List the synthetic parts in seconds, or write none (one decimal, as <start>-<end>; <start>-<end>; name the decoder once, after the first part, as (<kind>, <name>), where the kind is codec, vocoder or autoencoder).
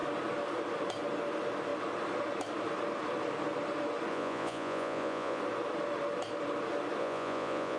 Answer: 4.1-5.4 (vocoder, Vocos); 7.0-7.8